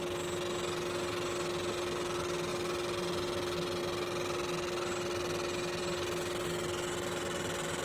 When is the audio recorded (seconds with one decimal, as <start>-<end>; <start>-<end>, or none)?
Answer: 0.0-7.8